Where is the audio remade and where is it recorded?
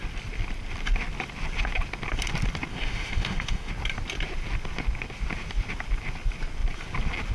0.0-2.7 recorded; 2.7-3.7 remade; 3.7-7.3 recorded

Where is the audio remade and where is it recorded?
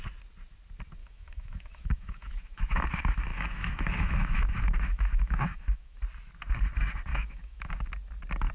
0.0-1.0 recorded; 1.0-2.8 remade; 2.8-3.3 recorded; 3.3-6.0 remade; 6.0-7.1 recorded; 7.1-7.9 remade; 7.9-8.5 recorded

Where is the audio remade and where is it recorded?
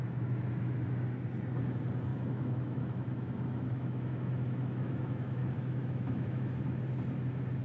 0.0-2.1 recorded; 2.1-6.5 remade; 6.5-7.6 recorded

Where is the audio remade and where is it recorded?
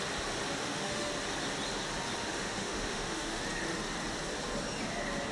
0.0-0.6 recorded; 0.6-1.1 remade; 1.1-2.2 recorded; 2.2-3.4 remade; 3.4-5.3 recorded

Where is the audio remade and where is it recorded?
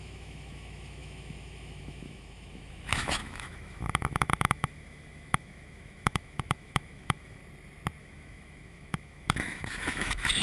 0.0-7.4 remade; 7.4-8.0 recorded; 8.0-10.4 remade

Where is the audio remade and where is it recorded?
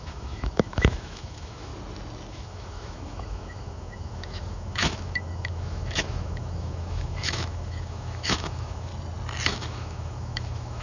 0.0-1.7 remade; 1.7-2.3 recorded; 2.3-8.9 remade; 8.9-9.5 recorded; 9.5-10.8 remade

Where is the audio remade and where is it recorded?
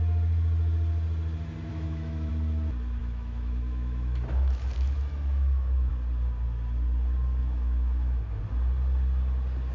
0.0-1.7 recorded; 1.7-2.3 remade; 2.3-3.0 recorded; 3.0-5.9 remade; 5.9-7.4 recorded; 7.4-8.4 remade; 8.4-9.7 recorded